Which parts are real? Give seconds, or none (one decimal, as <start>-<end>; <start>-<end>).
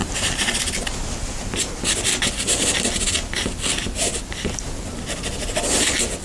0.6-6.2